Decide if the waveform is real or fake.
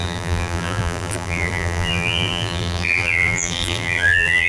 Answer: fake